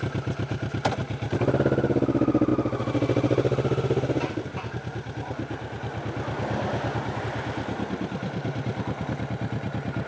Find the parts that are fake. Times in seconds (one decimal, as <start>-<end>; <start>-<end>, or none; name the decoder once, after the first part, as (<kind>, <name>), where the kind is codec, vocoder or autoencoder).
none